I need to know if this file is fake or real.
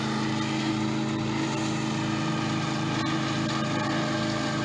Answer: real